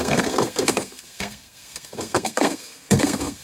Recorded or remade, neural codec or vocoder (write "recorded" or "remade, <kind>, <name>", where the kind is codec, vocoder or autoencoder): remade, codec, SNAC